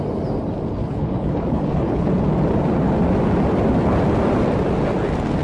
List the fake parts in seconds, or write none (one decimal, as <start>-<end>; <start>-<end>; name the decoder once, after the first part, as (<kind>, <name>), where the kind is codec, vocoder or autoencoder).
0.8-2.1 (codec, HILCodec)

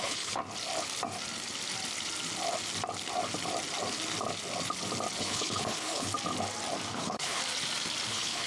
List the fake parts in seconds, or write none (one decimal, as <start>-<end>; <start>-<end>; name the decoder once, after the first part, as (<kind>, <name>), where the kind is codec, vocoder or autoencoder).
0.0-0.4 (codec, HILCodec); 5.2-6.1; 6.9-7.4; 8.1-8.5

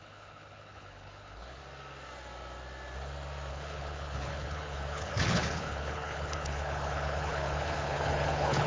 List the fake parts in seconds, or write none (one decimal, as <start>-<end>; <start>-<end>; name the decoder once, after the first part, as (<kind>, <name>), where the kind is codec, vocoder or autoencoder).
0.0-1.6 (codec, HILCodec); 3.5-8.7

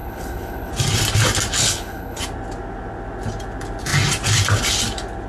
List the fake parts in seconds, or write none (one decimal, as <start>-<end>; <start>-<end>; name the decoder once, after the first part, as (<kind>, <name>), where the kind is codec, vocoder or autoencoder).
0.0-0.7 (codec, HILCodec); 1.6-2.2